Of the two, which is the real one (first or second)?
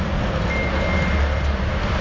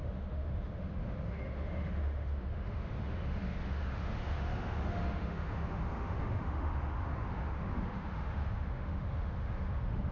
first